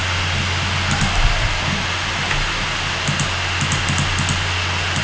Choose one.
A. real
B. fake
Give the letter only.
A